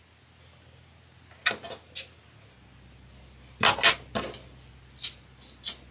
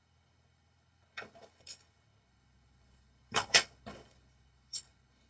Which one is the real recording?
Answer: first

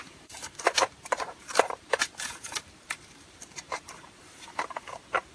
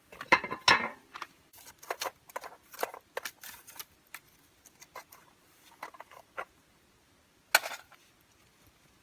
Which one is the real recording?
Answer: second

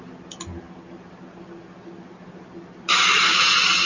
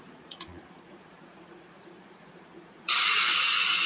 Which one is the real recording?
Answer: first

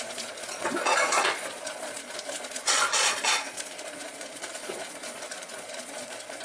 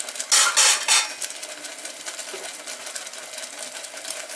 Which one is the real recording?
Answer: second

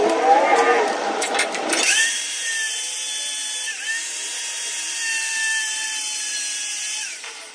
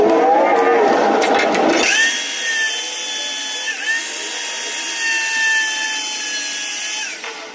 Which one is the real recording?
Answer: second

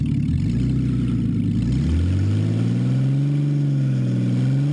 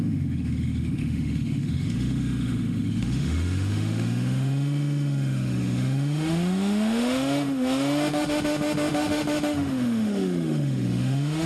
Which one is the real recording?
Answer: first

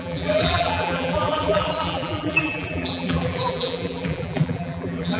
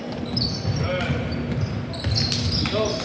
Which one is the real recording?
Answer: second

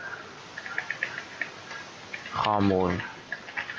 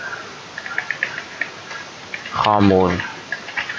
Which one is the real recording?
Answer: first